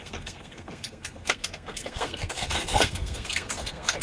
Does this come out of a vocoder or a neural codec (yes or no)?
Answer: yes